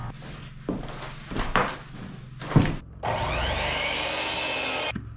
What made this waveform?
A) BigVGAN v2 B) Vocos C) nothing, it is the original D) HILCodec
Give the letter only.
C